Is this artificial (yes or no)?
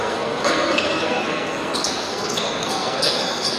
yes